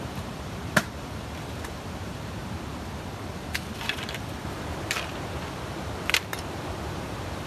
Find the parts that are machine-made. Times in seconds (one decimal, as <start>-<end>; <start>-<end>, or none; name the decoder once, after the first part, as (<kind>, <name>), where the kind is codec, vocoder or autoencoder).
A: 0.0-2.4 (vocoder, BigVGAN v2); 6.9-7.5